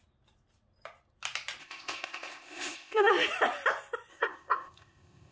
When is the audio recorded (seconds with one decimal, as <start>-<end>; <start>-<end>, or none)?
0.0-1.6; 3.1-4.1